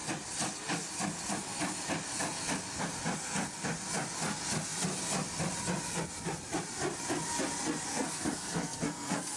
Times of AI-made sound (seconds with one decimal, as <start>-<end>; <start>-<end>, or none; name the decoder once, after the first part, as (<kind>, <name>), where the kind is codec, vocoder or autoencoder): 7.9-9.4 (codec, SNAC)

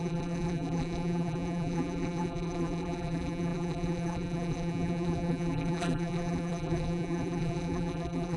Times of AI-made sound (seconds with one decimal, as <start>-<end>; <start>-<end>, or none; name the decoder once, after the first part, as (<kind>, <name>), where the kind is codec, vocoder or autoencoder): 0.0-8.4 (vocoder, BigVGAN v2)

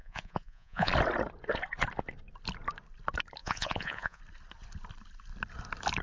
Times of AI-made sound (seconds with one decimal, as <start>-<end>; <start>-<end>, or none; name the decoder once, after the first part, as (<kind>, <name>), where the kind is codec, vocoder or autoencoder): 0.0-0.9 (vocoder, Vocos); 3.4-4.2

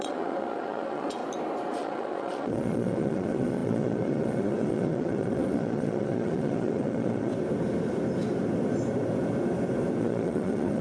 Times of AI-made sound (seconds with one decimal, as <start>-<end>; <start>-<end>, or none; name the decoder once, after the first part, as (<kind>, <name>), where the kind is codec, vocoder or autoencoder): 0.0-1.2 (vocoder, Vocos); 1.7-7.3; 10.0-10.8

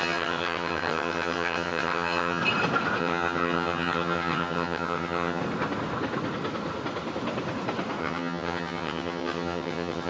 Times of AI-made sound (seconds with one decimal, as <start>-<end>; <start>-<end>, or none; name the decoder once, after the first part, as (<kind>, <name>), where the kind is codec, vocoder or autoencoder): 0.0-2.4 (vocoder, HiFi-GAN); 3.0-5.4; 8.0-10.1

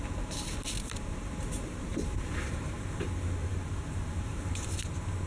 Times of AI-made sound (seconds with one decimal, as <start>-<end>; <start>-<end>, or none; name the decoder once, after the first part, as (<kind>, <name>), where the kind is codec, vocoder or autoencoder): 1.9-3.1 (vocoder, BigVGAN v2); 3.5-4.5

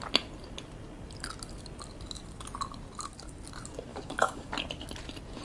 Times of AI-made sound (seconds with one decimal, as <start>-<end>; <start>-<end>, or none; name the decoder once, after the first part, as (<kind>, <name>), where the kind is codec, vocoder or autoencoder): 3.9-4.5 (codec, DAC)

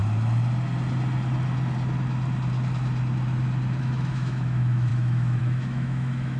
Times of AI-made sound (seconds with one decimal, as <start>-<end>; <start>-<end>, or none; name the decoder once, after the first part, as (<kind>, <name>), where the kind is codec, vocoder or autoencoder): 3.8-6.4 (autoencoder, DAC-VAE)